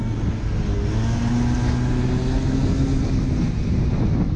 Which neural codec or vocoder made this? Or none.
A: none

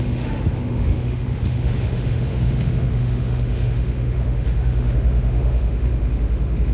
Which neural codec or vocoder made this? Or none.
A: autoencoder, DAC-VAE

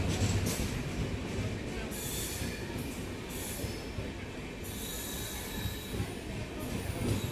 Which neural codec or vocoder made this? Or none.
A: none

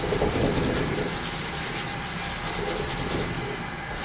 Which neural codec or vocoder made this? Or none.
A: none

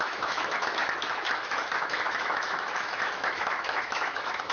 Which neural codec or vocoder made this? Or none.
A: autoencoder, DAC-VAE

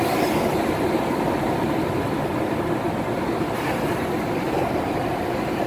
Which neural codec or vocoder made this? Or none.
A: none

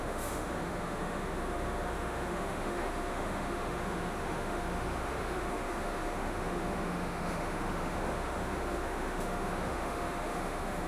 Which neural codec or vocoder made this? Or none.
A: autoencoder, DAC-VAE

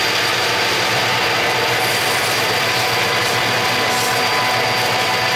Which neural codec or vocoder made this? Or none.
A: none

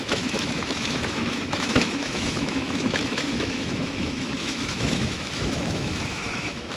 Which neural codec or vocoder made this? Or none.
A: autoencoder, DAC-VAE